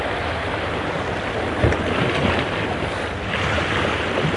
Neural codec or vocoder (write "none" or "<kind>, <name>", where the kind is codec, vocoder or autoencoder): none